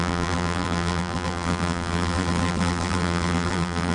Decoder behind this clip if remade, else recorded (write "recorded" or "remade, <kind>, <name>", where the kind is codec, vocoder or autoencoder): remade, vocoder, BigVGAN v2